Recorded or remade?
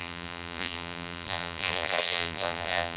remade